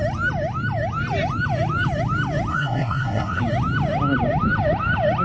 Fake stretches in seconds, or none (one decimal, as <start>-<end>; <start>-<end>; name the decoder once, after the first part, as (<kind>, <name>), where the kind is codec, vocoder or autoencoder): 2.5-3.4 (codec, SNAC)